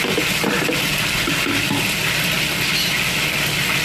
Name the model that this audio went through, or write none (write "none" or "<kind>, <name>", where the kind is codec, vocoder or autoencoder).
none